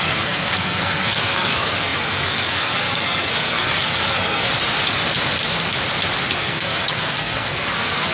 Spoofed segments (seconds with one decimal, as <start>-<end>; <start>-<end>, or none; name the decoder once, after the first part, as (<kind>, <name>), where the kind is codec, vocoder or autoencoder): 0.0-4.5 (codec, SNAC); 6.3-8.1